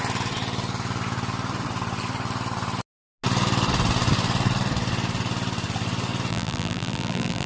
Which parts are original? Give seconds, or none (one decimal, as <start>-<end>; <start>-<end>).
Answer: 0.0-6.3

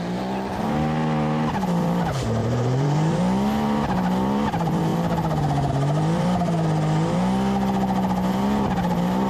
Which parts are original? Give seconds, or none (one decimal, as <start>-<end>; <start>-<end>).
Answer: 0.0-2.4; 3.2-9.3

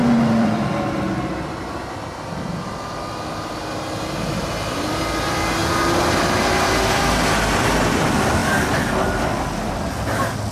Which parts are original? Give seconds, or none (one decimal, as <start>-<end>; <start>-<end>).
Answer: 1.0-10.5

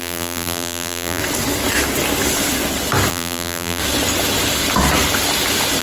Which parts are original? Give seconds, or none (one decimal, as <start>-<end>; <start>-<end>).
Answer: 1.2-3.1; 3.8-5.8

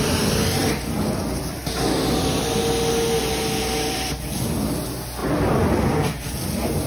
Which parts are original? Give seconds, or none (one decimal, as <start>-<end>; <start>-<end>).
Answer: 0.0-0.6; 1.6-5.2; 6.3-6.9

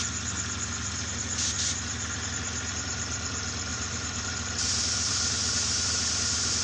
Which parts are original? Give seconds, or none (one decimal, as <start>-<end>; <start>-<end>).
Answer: 0.0-3.7; 6.1-6.6

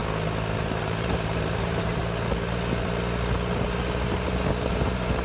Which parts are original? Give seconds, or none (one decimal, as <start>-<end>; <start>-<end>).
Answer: 0.0-0.8; 2.0-4.7

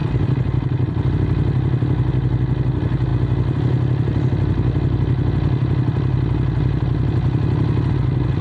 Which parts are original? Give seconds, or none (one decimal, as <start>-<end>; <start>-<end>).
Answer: 0.0-8.4